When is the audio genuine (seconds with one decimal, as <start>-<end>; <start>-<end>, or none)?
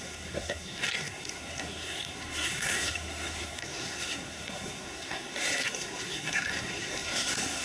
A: none